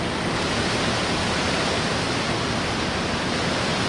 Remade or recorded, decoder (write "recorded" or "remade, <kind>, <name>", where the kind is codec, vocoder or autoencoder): recorded